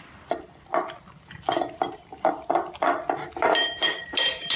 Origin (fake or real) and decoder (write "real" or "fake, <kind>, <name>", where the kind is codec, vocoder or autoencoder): fake, vocoder, BigVGAN v2